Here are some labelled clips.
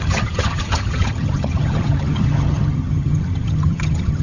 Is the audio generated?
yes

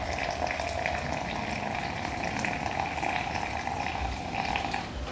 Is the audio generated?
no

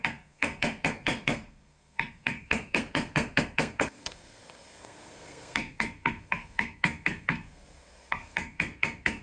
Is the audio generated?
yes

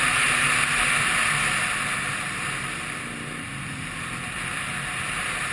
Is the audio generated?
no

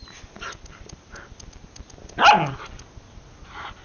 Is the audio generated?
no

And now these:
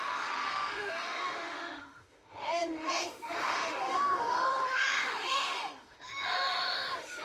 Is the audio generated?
yes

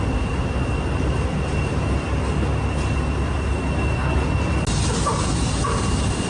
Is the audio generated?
no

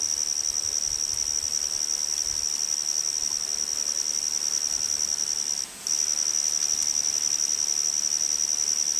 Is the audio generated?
no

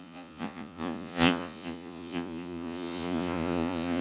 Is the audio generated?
yes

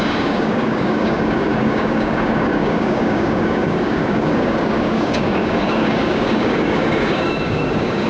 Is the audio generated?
yes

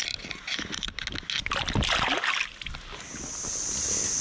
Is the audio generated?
no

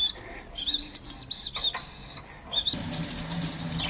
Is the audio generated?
no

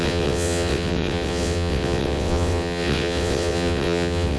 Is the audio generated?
yes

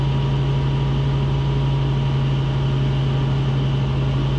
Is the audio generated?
no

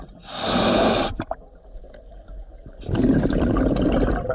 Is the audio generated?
no